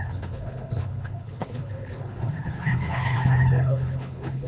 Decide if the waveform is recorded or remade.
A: remade